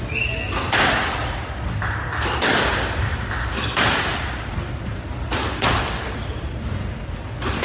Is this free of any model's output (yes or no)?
yes